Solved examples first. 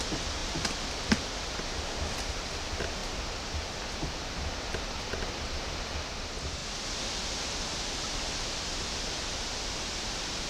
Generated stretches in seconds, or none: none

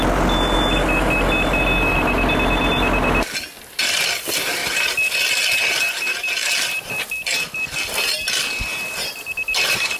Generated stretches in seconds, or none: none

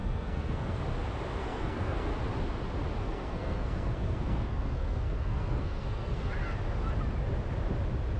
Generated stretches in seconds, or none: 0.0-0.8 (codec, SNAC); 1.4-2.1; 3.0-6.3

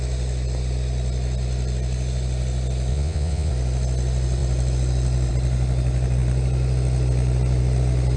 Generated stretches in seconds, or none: 2.9-3.5 (vocoder, Vocos)